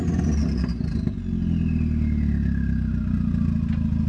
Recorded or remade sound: recorded